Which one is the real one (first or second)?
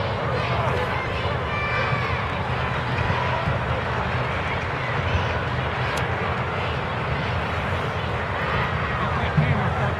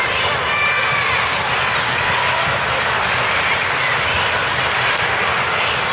first